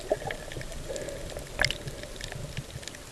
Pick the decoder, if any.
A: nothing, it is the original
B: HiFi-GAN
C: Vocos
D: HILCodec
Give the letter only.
A